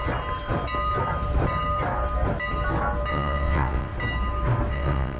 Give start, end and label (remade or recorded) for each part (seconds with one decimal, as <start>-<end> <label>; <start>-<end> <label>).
0.0-3.1 recorded; 3.1-3.9 remade; 3.9-4.7 recorded; 4.7-5.2 remade